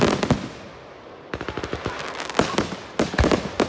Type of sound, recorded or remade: recorded